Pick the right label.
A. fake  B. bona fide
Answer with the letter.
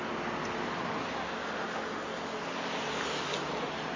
B